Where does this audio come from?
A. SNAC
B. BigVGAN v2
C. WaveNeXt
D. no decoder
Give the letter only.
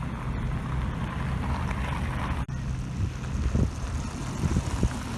D